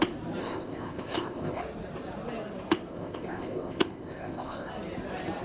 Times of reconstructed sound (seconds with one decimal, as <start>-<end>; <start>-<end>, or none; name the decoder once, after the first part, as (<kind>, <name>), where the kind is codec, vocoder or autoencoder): 0.4-1.6 (codec, ZipCodec); 2.9-4.7